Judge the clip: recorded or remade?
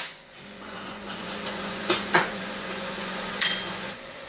remade